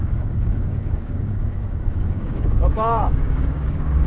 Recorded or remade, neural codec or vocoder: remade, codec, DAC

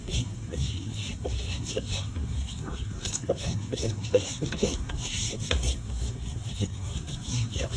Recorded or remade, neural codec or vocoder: remade, codec, SNAC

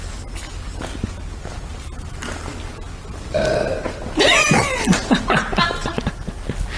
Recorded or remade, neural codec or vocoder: recorded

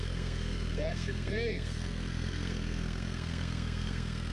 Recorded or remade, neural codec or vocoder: remade, codec, SNAC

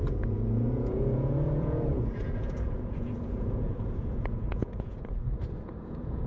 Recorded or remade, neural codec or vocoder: remade, vocoder, Vocos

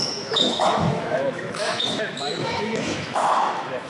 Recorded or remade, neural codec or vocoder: remade, autoencoder, DAC-VAE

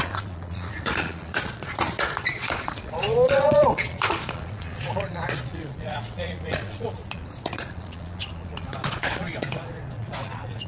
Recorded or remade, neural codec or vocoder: remade, vocoder, Vocos